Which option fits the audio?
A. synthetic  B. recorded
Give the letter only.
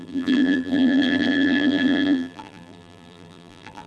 A